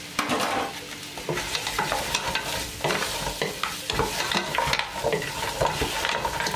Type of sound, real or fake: real